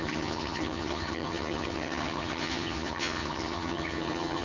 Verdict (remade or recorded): remade